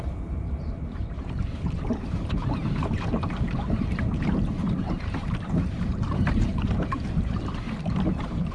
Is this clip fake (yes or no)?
yes